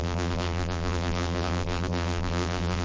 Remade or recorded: remade